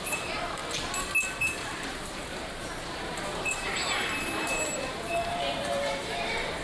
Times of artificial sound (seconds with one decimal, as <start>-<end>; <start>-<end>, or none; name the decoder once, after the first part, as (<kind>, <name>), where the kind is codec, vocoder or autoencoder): 0.0-0.6 (vocoder, BigVGAN v2); 1.4-6.6